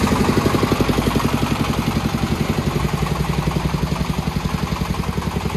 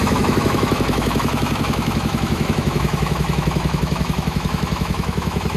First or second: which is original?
first